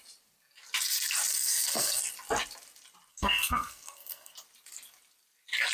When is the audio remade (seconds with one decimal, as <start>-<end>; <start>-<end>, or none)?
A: 1.3-2.0; 3.1-4.3